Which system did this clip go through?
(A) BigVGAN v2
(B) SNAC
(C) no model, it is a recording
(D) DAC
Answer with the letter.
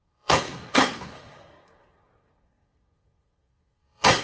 B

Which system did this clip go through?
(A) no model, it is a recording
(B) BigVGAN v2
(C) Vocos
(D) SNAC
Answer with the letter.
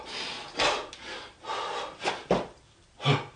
A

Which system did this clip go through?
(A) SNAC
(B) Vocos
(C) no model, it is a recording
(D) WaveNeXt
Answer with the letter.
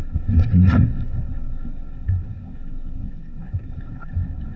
A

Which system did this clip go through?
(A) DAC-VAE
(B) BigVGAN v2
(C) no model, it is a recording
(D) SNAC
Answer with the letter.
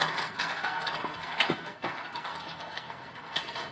D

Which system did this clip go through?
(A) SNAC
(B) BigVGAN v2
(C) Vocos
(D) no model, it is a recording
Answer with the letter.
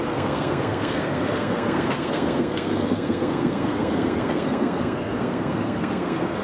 A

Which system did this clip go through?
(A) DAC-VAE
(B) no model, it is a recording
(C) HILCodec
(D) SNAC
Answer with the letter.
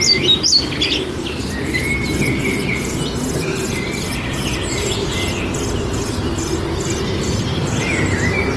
B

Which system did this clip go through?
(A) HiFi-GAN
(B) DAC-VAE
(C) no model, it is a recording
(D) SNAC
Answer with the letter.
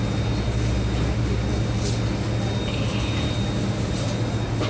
C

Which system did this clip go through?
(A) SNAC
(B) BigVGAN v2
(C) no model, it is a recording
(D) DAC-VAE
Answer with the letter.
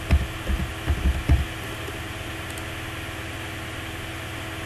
C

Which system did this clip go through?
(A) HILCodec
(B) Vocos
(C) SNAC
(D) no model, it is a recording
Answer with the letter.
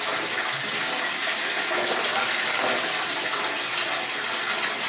D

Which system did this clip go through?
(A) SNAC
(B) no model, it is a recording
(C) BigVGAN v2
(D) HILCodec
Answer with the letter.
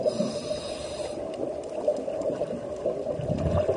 B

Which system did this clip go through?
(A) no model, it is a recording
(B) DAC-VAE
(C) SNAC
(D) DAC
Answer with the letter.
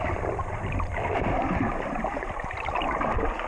A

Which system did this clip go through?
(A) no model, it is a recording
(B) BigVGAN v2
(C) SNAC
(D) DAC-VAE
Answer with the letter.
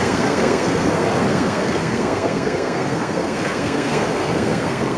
C